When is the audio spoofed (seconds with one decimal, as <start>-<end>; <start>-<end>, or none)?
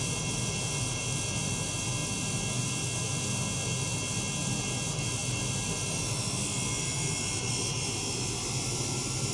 none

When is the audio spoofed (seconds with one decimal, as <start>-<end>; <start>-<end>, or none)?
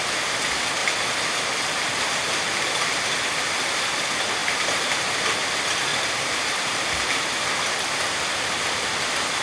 0.8-3.1; 4.4-5.4; 5.9-8.9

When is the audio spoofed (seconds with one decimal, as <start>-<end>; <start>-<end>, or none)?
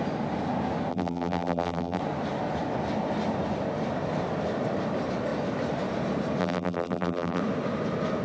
0.9-2.0; 6.4-7.4